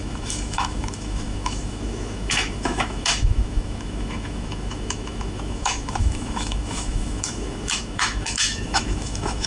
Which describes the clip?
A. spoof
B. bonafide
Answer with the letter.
A